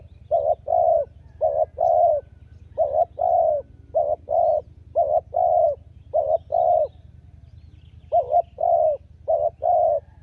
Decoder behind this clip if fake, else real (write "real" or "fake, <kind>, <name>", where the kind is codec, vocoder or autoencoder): real